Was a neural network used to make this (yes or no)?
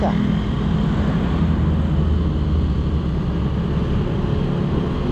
no